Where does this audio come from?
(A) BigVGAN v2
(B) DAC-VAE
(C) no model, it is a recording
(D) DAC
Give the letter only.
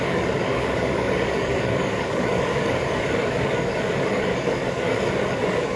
D